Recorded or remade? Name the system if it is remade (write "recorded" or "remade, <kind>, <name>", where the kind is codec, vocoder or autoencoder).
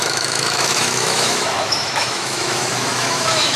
remade, autoencoder, DAC-VAE